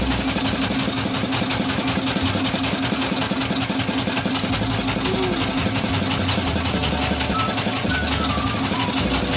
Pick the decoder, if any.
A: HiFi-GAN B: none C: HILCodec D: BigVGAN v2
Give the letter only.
B